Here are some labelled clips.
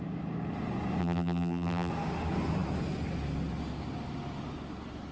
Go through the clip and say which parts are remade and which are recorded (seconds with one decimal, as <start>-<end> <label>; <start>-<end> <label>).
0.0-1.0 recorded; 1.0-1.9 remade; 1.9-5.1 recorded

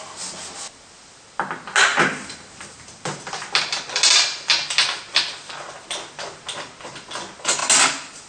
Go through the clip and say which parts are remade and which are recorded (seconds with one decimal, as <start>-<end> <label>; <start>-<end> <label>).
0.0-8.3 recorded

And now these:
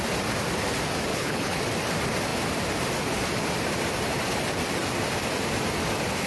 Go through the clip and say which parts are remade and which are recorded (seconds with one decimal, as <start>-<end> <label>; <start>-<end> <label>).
0.0-1.1 recorded; 1.1-1.6 remade; 1.6-6.3 recorded

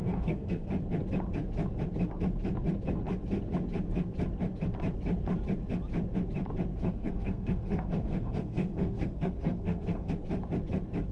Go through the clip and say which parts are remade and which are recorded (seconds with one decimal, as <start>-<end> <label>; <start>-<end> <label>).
0.0-0.7 remade; 0.7-6.7 recorded; 6.7-10.1 remade; 10.1-11.1 recorded

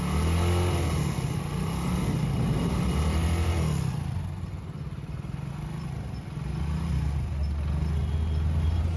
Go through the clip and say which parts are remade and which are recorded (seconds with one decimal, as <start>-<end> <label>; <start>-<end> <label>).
0.0-9.0 recorded

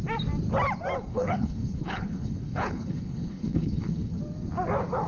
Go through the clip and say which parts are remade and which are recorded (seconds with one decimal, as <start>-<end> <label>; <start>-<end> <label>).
0.0-1.1 recorded; 1.1-4.2 remade; 4.2-5.1 recorded